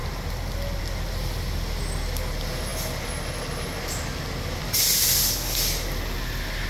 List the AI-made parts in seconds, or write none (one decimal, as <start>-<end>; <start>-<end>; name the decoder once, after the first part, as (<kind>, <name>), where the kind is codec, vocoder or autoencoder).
none